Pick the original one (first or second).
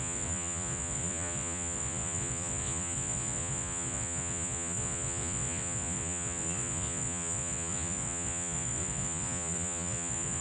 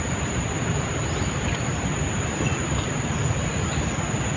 second